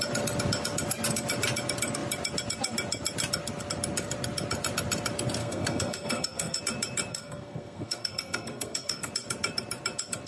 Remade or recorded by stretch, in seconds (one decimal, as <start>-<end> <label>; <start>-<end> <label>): 0.0-5.4 recorded; 5.4-6.6 remade; 6.6-7.1 recorded; 7.1-9.1 remade; 9.1-10.3 recorded